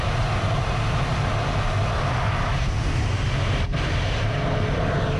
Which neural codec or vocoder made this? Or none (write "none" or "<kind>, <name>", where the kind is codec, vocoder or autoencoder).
none